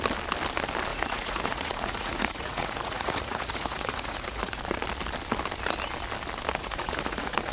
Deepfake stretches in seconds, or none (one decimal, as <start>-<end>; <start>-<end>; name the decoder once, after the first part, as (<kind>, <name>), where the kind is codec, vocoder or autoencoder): 0.9-4.6 (vocoder, Vocos); 6.6-7.5